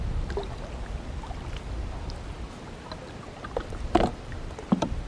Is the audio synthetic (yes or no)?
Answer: no